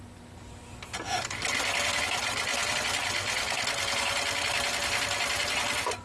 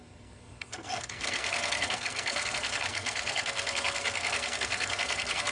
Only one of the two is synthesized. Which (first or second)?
second